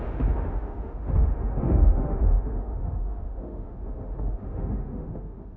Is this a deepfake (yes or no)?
yes